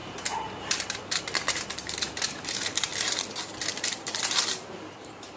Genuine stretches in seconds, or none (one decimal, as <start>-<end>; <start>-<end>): 2.9-3.8